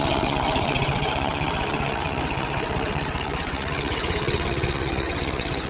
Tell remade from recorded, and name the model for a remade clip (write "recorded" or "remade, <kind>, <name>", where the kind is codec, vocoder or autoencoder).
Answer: remade, vocoder, WaveNeXt